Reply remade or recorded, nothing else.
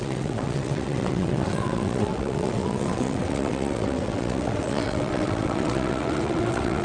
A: remade